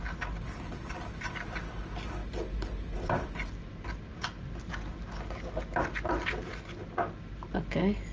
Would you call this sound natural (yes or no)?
yes